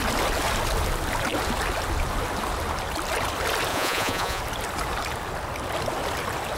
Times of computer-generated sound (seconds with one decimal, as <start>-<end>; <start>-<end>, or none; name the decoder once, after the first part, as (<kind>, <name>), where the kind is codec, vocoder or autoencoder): 3.7-4.4 (vocoder, Vocos)